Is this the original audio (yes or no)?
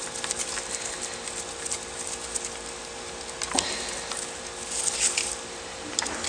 yes